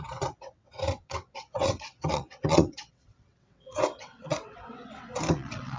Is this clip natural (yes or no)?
no